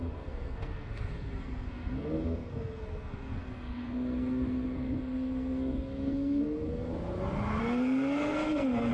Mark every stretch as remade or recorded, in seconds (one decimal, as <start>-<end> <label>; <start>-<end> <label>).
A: 0.0-6.9 remade; 6.9-7.6 recorded; 7.6-8.9 remade